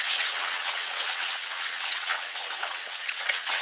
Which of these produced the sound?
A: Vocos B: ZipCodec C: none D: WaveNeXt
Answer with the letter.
D